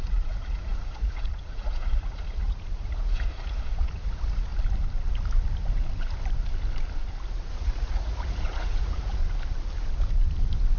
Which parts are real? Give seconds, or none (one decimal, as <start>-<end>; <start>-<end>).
4.5-7.5; 9.2-10.8